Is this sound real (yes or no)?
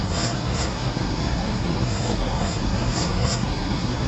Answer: no